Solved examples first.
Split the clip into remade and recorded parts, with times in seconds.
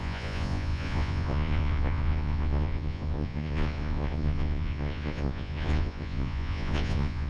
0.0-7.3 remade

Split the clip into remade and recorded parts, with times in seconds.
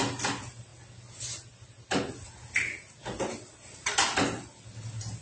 0.0-5.2 recorded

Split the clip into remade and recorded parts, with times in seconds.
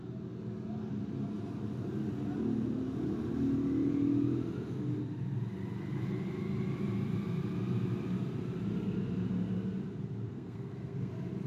0.0-10.3 recorded; 10.3-11.1 remade; 11.1-11.5 recorded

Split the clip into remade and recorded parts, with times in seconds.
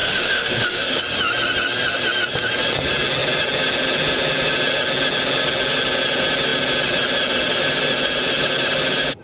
0.0-1.0 remade; 1.0-9.2 recorded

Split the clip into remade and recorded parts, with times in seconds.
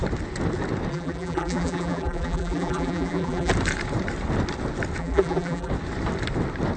0.0-0.9 recorded; 0.9-3.5 remade; 3.5-5.0 recorded; 5.0-5.7 remade; 5.7-6.8 recorded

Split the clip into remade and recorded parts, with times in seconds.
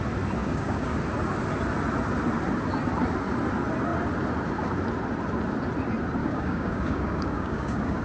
0.0-0.4 recorded; 0.4-1.0 remade; 1.0-6.2 recorded; 6.2-8.0 remade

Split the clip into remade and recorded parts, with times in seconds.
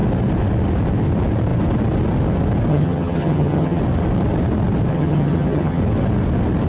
0.0-2.7 recorded; 2.7-3.8 remade; 3.8-4.9 recorded; 4.9-5.8 remade; 5.8-6.7 recorded